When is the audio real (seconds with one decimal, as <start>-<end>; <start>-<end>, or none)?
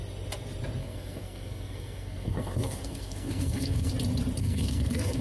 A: 0.0-0.8; 3.9-4.4